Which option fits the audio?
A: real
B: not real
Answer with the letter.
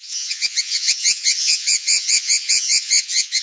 B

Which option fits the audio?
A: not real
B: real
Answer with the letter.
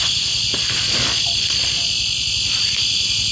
B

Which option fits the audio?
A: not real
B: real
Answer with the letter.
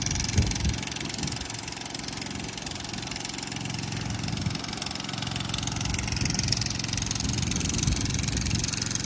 B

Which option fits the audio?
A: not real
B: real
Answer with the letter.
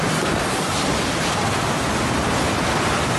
B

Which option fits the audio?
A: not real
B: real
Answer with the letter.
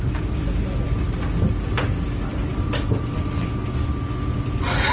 B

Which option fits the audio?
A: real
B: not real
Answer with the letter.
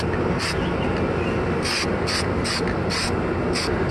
A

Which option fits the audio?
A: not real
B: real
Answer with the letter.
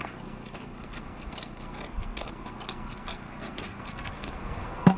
A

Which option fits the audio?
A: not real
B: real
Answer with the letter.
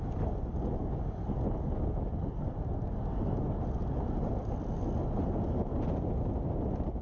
B